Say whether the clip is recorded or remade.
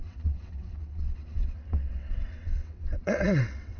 remade